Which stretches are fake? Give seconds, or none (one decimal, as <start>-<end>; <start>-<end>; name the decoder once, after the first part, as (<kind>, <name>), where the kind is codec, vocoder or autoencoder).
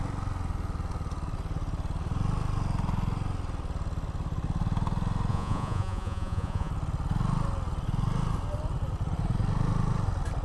5.3-6.7 (vocoder, Vocos)